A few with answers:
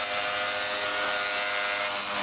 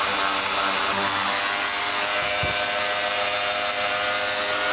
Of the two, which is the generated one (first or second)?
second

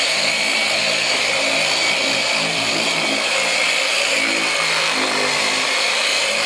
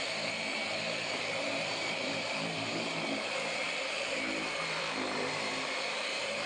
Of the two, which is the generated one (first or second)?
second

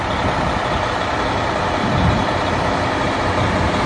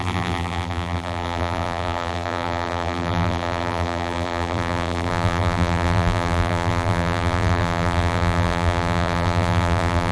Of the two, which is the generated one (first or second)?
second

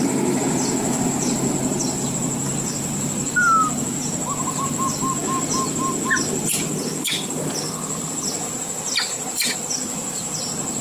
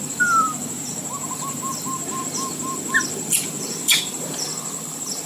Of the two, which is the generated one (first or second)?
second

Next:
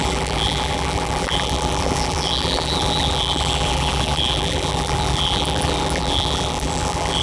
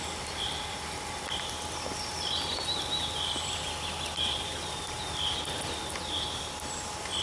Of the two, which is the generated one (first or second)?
first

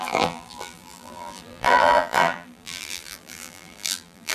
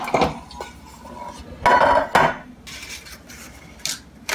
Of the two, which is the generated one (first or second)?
first